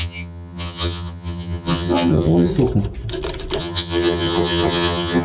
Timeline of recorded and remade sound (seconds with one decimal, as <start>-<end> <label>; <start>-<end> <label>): 0.0-2.5 remade; 2.5-3.6 recorded; 3.6-5.2 remade